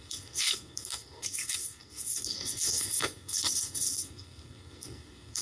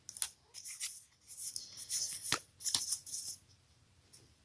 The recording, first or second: second